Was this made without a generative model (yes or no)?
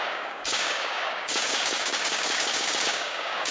no